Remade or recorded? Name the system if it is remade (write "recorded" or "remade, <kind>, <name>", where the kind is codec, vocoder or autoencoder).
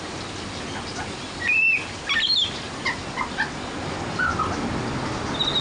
recorded